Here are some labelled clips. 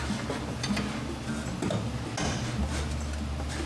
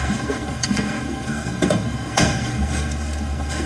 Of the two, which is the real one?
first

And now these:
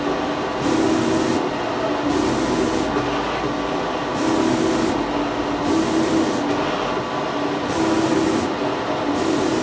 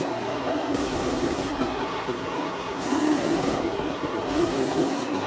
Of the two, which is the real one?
first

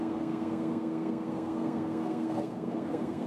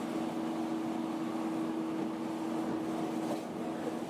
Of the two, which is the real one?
second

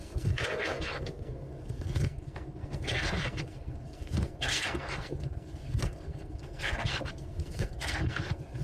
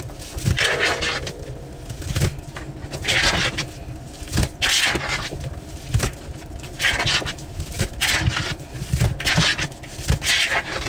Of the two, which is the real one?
second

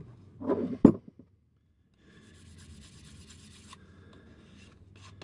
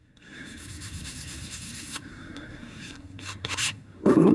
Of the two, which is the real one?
first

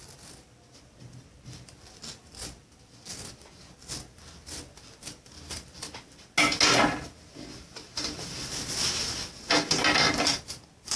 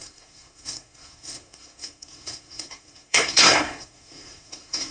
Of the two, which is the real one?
first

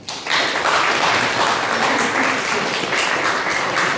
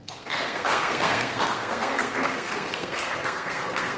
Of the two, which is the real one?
first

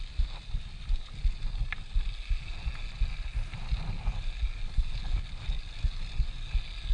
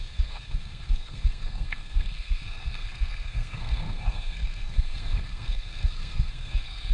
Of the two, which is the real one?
first